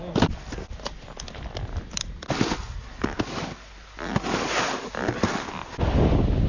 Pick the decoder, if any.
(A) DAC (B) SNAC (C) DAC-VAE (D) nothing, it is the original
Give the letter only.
D